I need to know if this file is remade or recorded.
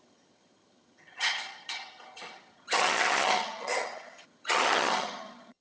remade